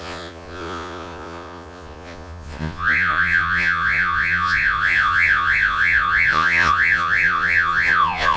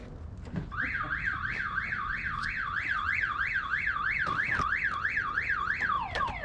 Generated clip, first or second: first